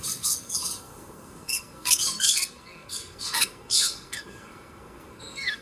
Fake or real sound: fake